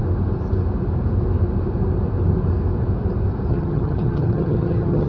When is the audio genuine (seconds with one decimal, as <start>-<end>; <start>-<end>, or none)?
0.0-3.5